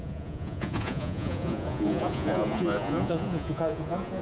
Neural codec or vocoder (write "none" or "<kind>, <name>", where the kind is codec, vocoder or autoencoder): vocoder, Vocos